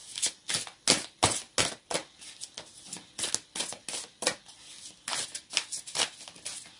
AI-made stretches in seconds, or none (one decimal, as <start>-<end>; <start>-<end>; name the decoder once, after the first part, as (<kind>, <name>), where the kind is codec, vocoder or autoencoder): none